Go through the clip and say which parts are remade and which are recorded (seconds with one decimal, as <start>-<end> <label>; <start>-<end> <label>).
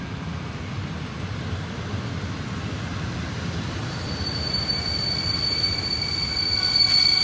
0.0-7.2 recorded